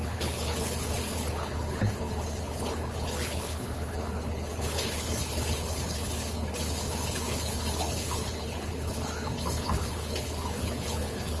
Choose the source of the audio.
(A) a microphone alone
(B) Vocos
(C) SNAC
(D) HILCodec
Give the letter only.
D